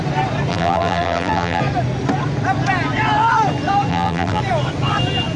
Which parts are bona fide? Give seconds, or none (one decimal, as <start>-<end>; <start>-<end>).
0.0-0.5; 1.6-3.9; 4.4-5.4